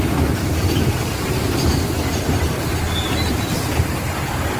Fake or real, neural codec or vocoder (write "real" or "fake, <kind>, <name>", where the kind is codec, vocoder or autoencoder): fake, vocoder, BigVGAN v2